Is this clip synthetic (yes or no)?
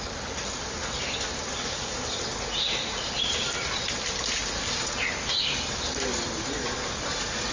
no